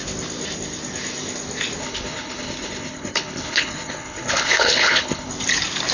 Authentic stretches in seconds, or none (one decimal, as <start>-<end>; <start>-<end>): 0.0-1.8; 5.3-5.9